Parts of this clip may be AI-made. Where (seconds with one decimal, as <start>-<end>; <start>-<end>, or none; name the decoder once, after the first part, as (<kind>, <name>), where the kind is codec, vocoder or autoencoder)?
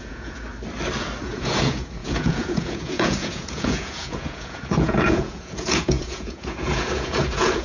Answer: 0.0-0.5 (vocoder, Vocos); 1.2-7.6